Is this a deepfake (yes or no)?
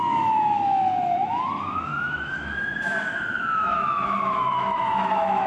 yes